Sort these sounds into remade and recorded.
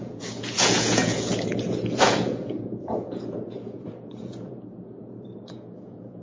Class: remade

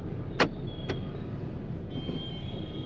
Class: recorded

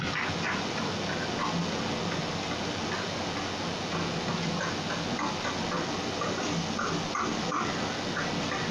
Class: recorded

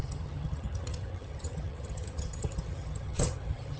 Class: remade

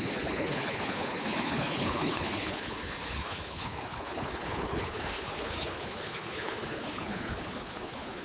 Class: remade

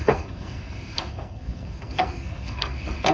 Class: remade